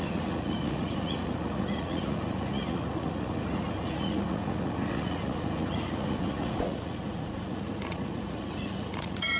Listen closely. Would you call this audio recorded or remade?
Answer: remade